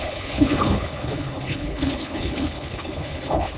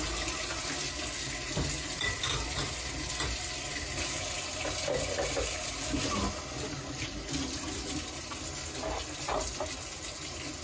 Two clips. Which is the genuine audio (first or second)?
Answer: second